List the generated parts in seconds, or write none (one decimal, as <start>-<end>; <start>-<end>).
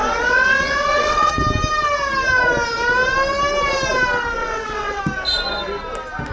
0.0-1.3; 4.4-5.0